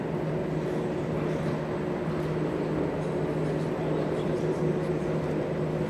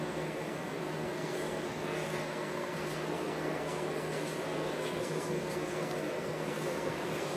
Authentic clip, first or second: first